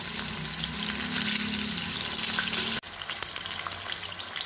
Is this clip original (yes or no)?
yes